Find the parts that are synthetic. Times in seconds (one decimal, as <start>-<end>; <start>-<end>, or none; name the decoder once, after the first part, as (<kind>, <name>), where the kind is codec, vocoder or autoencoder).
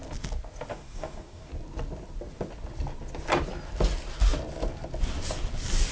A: 0.7-1.5 (codec, DAC)